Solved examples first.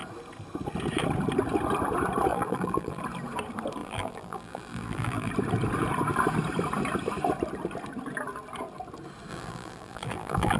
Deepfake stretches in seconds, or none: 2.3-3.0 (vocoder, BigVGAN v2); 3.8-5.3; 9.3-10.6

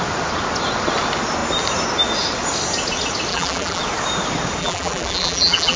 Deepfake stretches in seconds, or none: 3.3-3.8 (vocoder, BigVGAN v2); 4.6-5.8

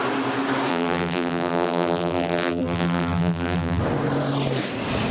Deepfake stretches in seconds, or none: 0.7-3.8 (vocoder, BigVGAN v2)

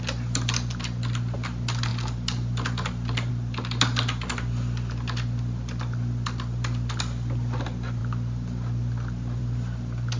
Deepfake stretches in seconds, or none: none

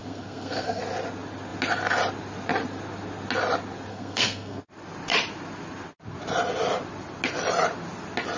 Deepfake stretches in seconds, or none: 0.0-0.8 (codec, SNAC); 3.9-4.6